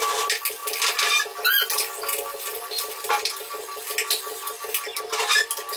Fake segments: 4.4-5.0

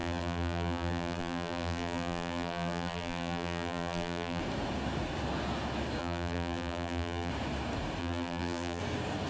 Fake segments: 0.0-4.4; 6.0-7.3; 8.0-8.8

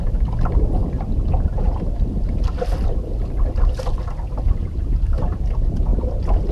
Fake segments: none